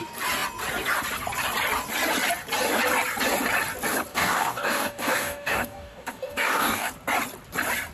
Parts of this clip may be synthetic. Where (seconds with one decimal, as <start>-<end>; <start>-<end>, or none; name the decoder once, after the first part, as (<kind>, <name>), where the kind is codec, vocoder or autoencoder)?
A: 4.1-6.9 (codec, DAC)